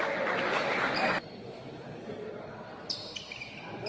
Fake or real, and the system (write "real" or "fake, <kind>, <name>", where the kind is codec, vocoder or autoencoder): real